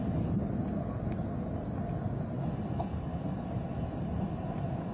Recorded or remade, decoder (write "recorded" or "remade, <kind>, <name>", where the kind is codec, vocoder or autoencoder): recorded